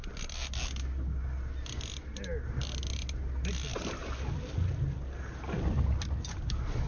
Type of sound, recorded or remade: recorded